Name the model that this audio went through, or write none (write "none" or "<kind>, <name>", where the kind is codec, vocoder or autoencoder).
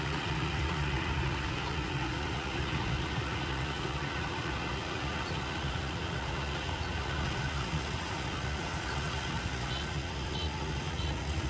vocoder, Vocos